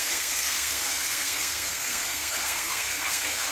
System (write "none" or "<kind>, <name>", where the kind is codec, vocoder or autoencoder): codec, SNAC